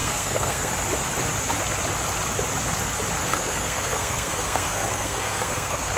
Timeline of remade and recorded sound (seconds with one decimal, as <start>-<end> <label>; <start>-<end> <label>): 0.0-0.7 remade; 0.7-3.2 recorded; 3.2-6.0 remade